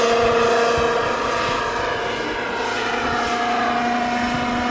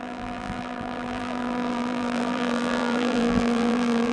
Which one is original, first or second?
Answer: first